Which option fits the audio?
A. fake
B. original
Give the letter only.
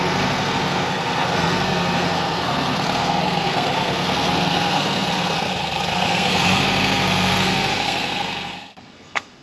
A